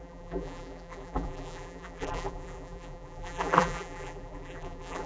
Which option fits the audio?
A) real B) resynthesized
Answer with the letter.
B